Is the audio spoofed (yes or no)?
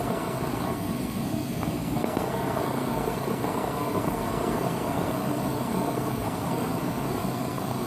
yes